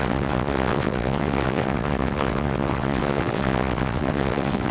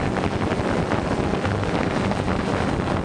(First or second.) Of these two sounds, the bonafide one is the second